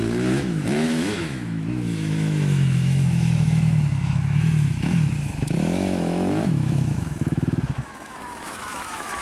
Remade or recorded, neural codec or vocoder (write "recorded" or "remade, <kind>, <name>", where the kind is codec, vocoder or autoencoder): remade, autoencoder, DAC-VAE